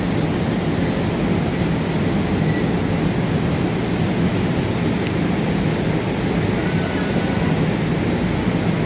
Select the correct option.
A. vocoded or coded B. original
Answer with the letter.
B